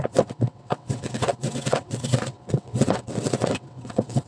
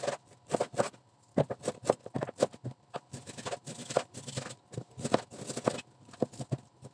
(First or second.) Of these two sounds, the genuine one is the second